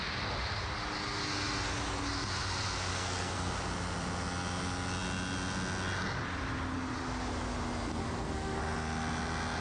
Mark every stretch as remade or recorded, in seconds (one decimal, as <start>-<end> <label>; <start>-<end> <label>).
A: 0.0-2.9 recorded; 2.9-3.5 remade; 3.5-8.0 recorded; 8.0-8.6 remade; 8.6-9.6 recorded